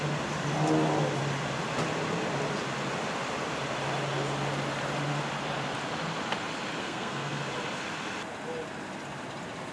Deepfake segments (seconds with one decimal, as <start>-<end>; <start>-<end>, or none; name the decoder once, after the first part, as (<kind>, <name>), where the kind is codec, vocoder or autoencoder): 6.8-7.4 (codec, SNAC)

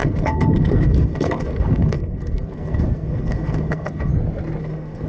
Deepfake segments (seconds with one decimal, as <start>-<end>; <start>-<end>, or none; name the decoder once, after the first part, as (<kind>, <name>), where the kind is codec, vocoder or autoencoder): 0.0-4.1 (codec, SNAC); 4.6-5.1

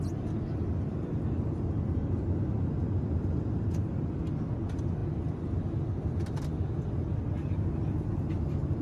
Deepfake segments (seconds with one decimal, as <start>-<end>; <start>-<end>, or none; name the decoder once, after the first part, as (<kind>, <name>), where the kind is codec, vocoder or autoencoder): none

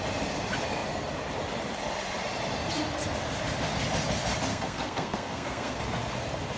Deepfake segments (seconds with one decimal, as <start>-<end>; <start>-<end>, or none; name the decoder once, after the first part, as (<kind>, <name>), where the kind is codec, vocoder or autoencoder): 4.5-5.8 (codec, SNAC)

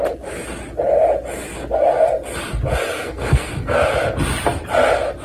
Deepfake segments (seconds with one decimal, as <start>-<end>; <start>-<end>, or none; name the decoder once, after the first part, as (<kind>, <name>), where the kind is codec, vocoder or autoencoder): 2.9-3.8 (codec, SNAC)

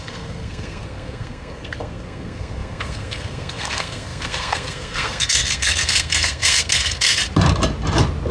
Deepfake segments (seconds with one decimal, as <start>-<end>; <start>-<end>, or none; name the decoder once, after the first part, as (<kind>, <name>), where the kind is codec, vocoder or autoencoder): 0.0-7.2 (codec, SNAC)

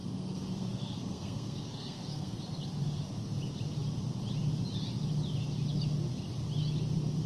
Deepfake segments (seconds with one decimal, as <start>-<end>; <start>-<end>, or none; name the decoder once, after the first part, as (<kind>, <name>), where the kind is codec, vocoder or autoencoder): 0.0-2.4 (codec, SNAC)